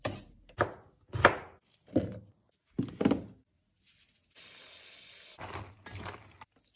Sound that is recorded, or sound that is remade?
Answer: recorded